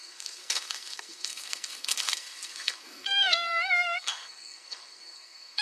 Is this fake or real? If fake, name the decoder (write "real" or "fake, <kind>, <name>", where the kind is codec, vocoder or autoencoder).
fake, codec, SNAC